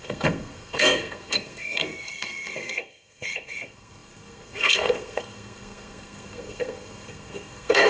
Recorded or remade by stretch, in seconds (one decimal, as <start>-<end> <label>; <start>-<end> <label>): 0.0-7.9 remade